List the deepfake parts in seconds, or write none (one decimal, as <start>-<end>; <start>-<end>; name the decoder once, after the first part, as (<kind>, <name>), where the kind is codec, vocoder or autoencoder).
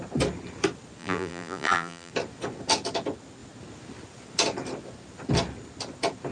1.0-2.1 (vocoder, BigVGAN v2)